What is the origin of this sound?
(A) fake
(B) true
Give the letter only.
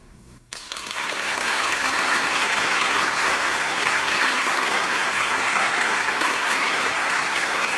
A